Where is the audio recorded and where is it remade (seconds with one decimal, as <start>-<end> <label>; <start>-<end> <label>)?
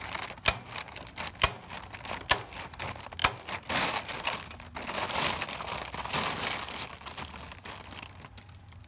0.0-8.9 recorded